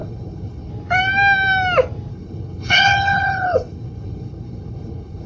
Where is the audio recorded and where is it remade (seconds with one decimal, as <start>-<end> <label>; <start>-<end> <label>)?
0.0-0.7 remade; 0.7-2.1 recorded; 2.1-5.3 remade